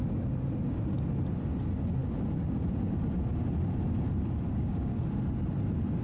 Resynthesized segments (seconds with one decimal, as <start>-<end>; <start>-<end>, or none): 4.7-5.2